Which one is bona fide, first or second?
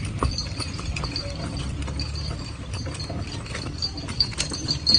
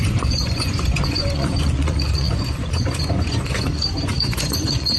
first